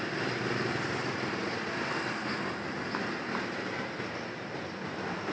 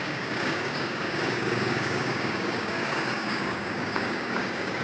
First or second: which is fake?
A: second